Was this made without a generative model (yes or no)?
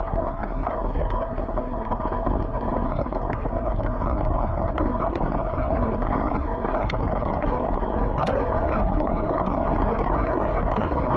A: no